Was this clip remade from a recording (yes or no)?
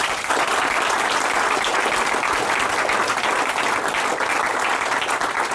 no